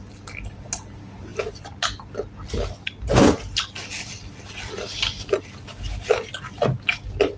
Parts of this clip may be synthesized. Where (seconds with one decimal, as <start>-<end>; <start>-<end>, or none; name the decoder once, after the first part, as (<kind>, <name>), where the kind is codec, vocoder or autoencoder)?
none